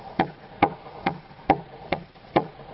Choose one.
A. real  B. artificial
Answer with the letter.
B